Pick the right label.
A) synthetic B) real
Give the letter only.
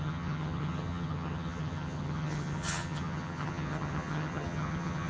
A